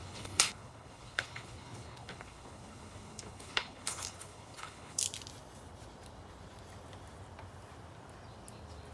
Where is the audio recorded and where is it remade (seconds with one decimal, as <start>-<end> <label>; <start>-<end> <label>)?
0.0-5.0 remade; 5.0-8.9 recorded